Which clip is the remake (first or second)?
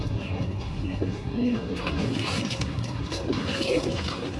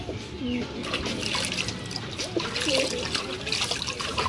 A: first